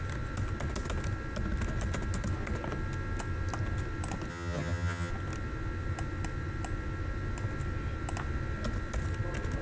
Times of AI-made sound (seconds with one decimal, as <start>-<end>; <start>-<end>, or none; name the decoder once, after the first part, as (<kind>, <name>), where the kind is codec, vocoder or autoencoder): 4.3-5.1 (vocoder, HiFi-GAN)